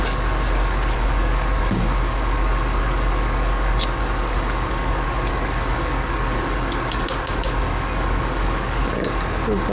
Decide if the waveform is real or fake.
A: fake